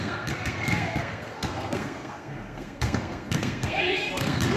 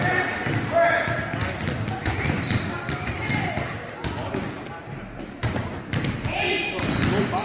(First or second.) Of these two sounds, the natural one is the second